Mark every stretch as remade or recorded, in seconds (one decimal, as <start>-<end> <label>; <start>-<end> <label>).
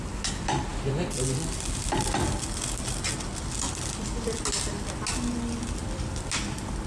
0.0-5.8 recorded; 5.8-6.3 remade; 6.3-6.9 recorded